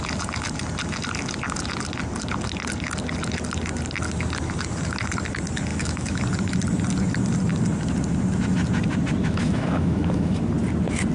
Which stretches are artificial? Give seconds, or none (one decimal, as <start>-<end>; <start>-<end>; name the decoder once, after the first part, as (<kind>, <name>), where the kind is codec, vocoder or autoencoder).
5.7-6.2 (autoencoder, DAC-VAE); 9.2-10.4